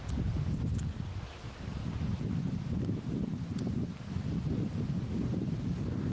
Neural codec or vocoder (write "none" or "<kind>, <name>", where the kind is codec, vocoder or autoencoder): none